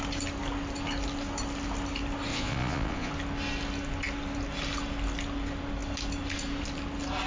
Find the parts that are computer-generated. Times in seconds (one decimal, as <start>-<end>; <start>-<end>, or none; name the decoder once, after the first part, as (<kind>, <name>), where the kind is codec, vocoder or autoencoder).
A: 2.3-3.1 (vocoder, Vocos)